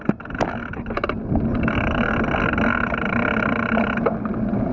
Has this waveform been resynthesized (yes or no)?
no